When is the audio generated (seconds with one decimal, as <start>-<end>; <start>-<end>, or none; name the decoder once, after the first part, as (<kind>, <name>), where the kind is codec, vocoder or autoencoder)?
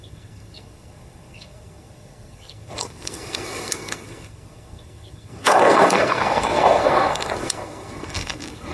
0.0-8.7 (codec, SNAC)